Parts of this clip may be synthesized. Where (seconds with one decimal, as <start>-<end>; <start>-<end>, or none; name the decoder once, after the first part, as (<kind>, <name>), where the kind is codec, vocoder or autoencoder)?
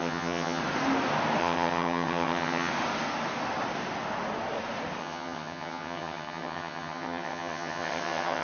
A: 0.0-0.6 (vocoder, HiFi-GAN); 1.4-2.7; 5.0-8.4